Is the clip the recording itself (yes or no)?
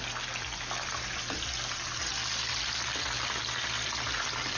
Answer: yes